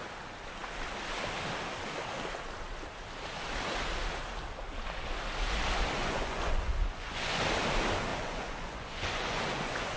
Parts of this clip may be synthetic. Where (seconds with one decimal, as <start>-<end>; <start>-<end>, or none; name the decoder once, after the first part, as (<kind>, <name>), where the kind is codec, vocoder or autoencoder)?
6.0-7.4 (vocoder, Vocos); 8.1-10.0

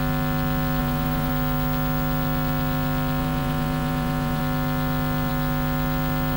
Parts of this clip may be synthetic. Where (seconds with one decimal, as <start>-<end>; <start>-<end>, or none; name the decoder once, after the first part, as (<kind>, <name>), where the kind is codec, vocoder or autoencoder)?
0.8-1.3 (vocoder, Vocos); 3.2-4.4